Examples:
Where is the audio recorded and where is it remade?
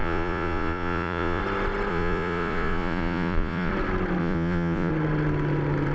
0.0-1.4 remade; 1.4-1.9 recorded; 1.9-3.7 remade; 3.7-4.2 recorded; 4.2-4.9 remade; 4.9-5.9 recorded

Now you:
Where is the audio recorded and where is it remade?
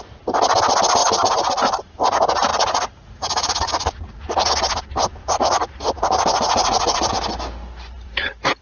0.0-1.0 recorded; 1.0-1.8 remade; 1.8-2.5 recorded; 2.5-4.5 remade; 4.5-5.2 recorded; 5.2-7.1 remade; 7.1-8.6 recorded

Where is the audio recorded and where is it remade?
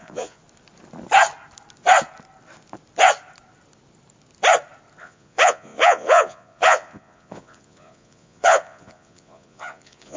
0.0-0.4 remade; 0.4-5.0 recorded; 5.0-10.2 remade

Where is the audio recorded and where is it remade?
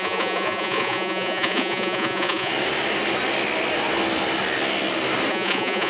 0.0-2.5 remade; 2.5-5.3 recorded; 5.3-5.9 remade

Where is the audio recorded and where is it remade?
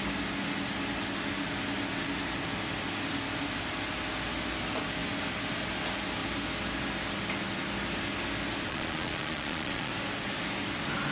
0.0-8.7 recorded; 8.7-9.9 remade; 9.9-11.1 recorded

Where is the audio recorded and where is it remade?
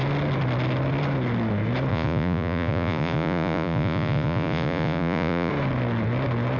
0.0-1.9 recorded; 1.9-5.5 remade; 5.5-6.6 recorded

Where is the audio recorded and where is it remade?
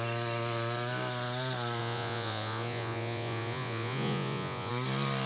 0.0-1.8 recorded; 1.8-4.7 remade; 4.7-5.3 recorded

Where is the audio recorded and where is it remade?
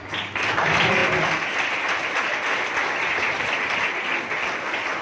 0.0-5.0 recorded